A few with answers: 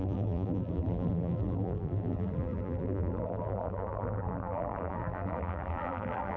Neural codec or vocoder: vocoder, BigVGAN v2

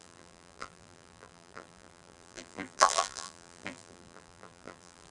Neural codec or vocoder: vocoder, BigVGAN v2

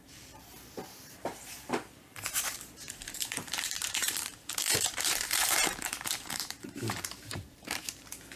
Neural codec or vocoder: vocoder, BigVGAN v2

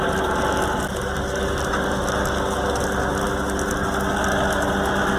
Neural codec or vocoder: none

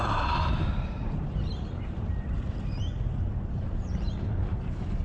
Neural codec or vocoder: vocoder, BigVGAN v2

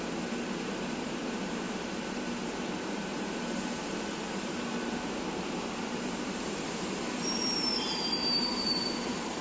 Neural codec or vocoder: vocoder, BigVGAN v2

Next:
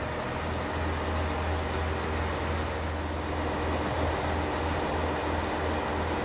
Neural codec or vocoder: none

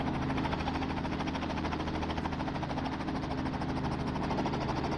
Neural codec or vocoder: none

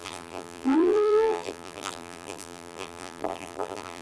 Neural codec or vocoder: vocoder, BigVGAN v2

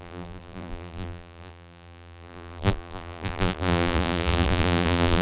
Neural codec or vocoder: vocoder, BigVGAN v2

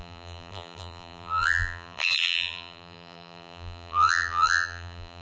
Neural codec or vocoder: vocoder, BigVGAN v2